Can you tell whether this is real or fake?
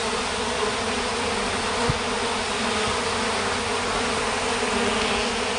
real